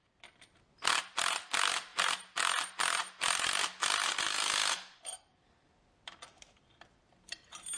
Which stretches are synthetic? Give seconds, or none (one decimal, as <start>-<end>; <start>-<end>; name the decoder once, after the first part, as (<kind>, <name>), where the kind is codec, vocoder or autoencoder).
none